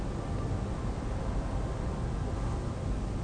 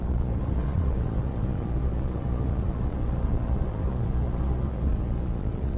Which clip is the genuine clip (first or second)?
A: first